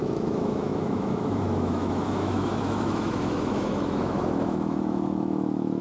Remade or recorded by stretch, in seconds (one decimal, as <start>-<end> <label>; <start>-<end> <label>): 0.0-5.8 remade